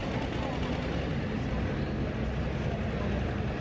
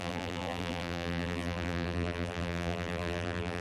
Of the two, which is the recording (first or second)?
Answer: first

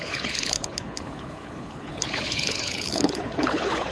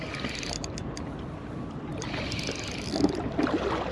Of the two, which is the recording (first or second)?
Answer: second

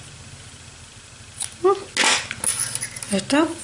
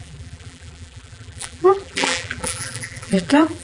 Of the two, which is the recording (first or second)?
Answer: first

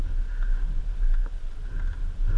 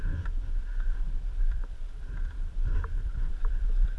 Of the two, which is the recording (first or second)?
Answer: first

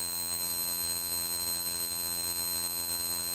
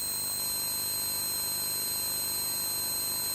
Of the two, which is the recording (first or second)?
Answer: second